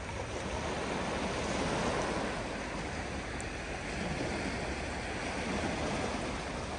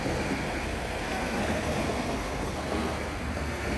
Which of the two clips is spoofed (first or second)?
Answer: second